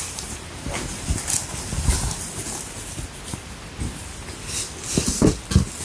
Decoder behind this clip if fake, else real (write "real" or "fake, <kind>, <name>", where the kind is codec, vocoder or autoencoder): real